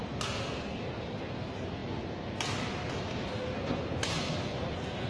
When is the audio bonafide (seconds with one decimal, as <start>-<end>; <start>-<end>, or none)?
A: 0.0-5.1